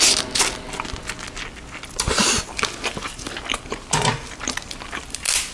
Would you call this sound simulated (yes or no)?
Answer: no